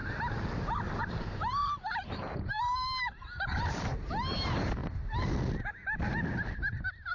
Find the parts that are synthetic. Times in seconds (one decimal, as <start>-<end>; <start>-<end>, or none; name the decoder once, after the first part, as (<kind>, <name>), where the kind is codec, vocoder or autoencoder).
1.1-4.8 (vocoder, BigVGAN v2); 5.7-7.1